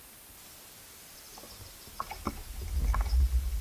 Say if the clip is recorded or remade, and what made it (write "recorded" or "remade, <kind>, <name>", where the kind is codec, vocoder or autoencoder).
recorded